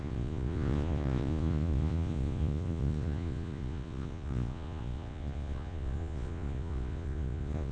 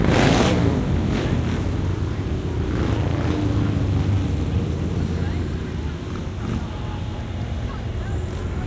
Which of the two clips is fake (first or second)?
first